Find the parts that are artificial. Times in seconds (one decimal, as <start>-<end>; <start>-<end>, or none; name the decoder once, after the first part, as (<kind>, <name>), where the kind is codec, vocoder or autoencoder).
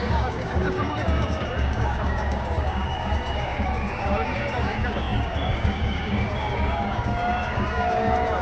0.0-8.4 (codec, DAC)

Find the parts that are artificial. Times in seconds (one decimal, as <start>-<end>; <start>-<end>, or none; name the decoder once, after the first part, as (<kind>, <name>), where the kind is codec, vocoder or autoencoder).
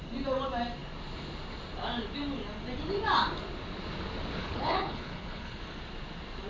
4.4-5.6 (codec, HILCodec)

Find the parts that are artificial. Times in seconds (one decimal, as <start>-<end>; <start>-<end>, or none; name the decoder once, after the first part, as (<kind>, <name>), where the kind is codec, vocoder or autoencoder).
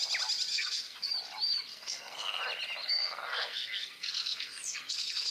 0.5-1.1 (codec, SNAC); 1.7-2.4; 2.8-5.3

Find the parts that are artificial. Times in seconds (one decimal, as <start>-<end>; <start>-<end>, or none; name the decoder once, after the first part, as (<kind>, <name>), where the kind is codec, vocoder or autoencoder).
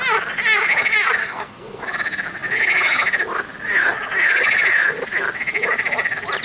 1.2-1.8 (codec, SNAC)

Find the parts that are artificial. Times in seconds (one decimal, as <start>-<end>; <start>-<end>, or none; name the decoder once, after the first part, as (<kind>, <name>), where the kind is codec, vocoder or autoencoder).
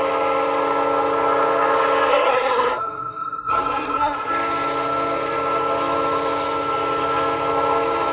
2.1-4.3 (codec, SNAC)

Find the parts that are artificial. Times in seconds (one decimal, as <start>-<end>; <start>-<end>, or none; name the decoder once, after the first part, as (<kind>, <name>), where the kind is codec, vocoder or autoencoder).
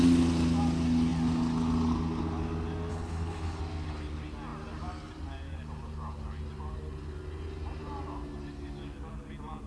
2.9-3.6 (codec, HILCodec)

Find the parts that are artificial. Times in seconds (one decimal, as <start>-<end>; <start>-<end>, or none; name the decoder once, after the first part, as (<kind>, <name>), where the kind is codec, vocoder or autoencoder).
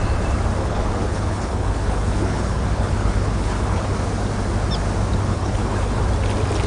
0.6-3.9 (codec, HILCodec); 5.3-6.0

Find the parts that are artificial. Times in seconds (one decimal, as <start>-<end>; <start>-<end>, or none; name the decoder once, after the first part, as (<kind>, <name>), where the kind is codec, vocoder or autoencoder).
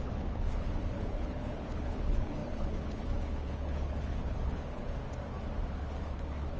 0.0-5.0 (codec, HILCodec); 5.7-6.6